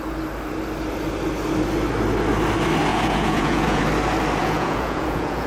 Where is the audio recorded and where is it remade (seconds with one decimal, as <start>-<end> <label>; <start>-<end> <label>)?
0.0-2.9 recorded; 2.9-3.8 remade; 3.8-4.4 recorded; 4.4-5.5 remade